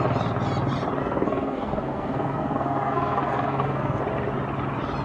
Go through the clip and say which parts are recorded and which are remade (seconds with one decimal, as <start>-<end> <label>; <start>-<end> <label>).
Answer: 0.0-1.0 recorded; 1.0-4.0 remade; 4.0-5.0 recorded